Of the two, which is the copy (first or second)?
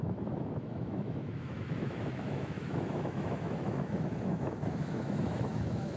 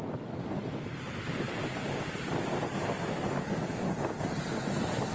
first